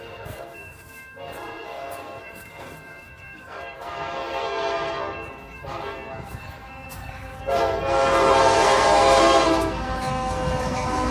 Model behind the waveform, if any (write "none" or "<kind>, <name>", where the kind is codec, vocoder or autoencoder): codec, SNAC